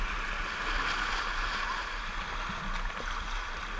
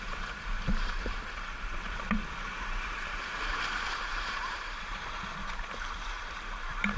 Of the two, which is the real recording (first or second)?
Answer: first